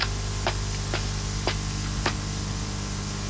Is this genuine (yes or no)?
yes